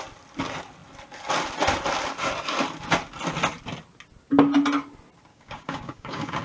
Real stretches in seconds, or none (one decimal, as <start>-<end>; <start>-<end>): 0.0-5.3